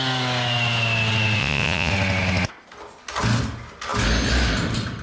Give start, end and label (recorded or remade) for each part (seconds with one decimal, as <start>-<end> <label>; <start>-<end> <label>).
0.0-1.4 recorded; 1.4-1.9 remade; 1.9-5.0 recorded